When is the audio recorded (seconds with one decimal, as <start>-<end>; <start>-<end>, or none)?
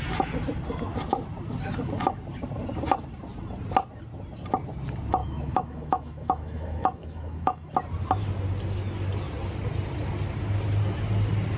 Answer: 0.0-5.2; 7.7-11.6